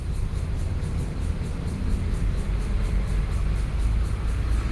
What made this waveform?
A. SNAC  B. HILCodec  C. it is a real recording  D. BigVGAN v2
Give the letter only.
C